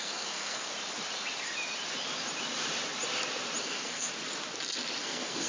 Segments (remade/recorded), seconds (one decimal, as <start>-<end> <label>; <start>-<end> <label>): 0.0-0.7 remade; 0.7-3.6 recorded; 3.6-4.1 remade; 4.1-5.0 recorded; 5.0-5.5 remade